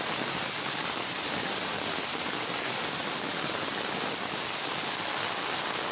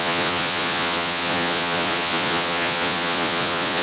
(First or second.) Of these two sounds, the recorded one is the first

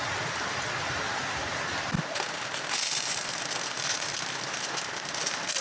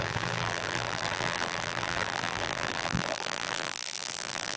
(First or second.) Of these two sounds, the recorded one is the first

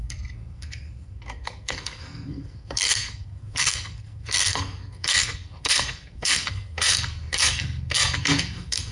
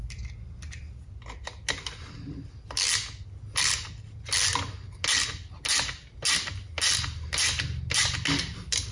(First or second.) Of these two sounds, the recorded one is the second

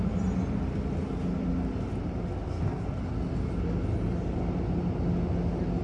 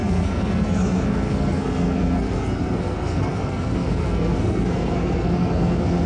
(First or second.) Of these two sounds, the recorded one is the first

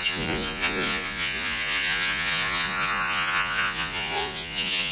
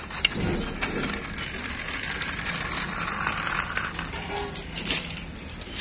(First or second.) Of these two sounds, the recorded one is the second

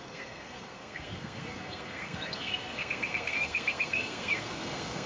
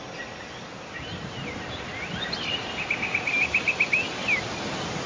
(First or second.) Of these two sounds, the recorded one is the second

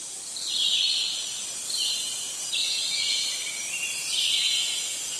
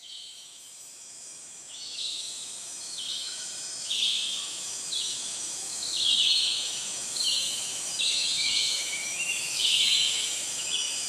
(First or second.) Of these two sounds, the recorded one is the first